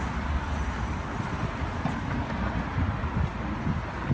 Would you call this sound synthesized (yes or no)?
no